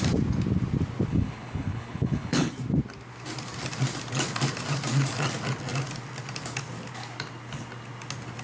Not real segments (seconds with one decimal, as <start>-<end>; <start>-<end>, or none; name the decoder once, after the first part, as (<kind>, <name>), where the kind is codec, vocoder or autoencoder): 1.1-2.5 (codec, HILCodec)